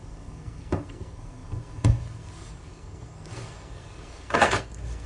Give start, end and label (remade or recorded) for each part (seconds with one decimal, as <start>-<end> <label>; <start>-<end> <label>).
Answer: 0.0-5.1 remade